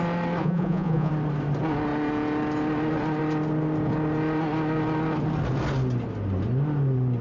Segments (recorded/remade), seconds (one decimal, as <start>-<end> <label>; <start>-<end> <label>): 0.0-0.4 recorded; 0.4-1.1 remade; 1.1-7.2 recorded